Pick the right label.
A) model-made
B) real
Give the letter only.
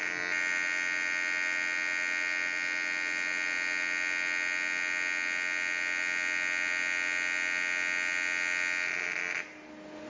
B